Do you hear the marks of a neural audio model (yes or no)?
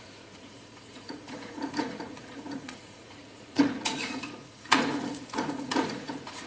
yes